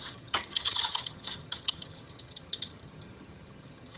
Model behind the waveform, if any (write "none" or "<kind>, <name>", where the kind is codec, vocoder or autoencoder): vocoder, HiFi-GAN